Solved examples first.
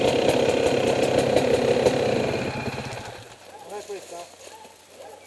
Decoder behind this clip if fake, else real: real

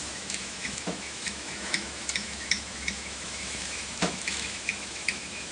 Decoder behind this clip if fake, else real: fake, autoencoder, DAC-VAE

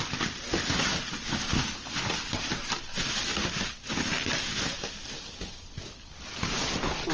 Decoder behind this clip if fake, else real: real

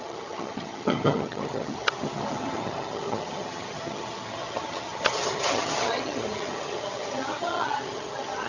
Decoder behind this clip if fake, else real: fake, vocoder, HiFi-GAN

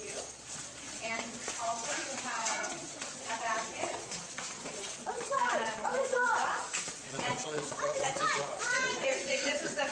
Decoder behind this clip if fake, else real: fake, vocoder, Vocos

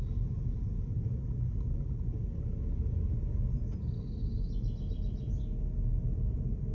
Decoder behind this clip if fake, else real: real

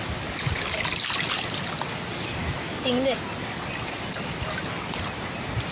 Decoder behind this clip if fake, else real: real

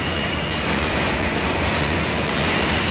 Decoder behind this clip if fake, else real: fake, vocoder, Vocos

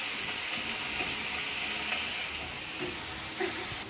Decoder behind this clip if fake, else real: real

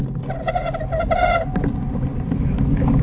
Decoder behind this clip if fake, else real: real